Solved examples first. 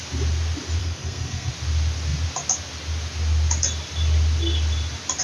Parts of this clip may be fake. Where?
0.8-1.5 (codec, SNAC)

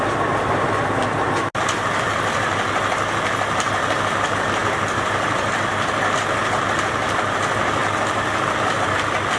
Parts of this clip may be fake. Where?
none

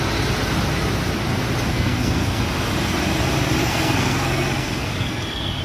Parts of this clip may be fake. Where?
1.7-2.4 (codec, SNAC); 3.6-5.6

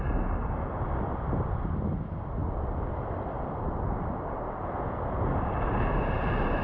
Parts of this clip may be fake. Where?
none

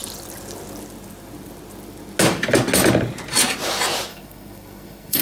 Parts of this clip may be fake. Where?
4.1-5.2 (codec, SNAC)

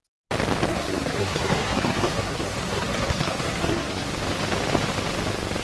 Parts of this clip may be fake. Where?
0.7-4.1 (codec, SNAC)

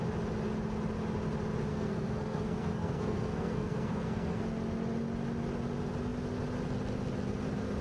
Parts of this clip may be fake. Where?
1.7-4.4 (codec, SNAC)